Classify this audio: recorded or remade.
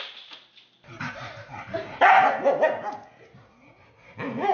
recorded